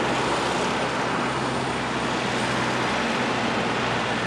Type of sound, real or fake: real